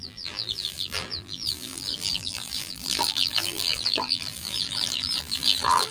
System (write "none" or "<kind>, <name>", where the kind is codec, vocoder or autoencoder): vocoder, BigVGAN v2